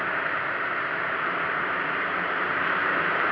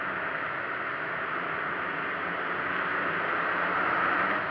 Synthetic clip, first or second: first